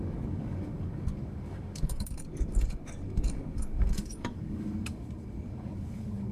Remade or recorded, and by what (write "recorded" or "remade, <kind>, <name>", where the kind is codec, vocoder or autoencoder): remade, codec, DAC